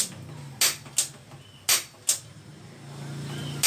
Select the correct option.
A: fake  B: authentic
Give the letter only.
B